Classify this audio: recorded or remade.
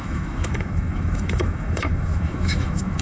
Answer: remade